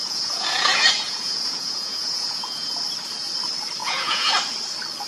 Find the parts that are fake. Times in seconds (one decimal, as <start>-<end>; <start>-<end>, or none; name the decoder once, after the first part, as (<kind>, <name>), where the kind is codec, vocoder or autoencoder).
0.0-2.7 (vocoder, Vocos); 3.8-4.3